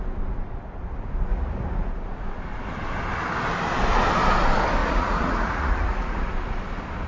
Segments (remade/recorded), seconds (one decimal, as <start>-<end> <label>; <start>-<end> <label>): 0.0-1.3 recorded; 1.3-1.9 remade; 1.9-4.8 recorded; 4.8-6.3 remade; 6.3-7.1 recorded